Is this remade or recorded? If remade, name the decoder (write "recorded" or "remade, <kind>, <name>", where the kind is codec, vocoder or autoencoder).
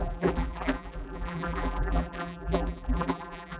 remade, vocoder, BigVGAN v2